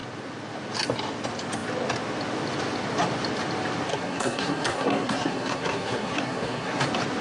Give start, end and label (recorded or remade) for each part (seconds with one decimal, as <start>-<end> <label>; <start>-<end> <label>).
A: 0.0-3.9 recorded; 3.9-6.8 remade; 6.8-7.2 recorded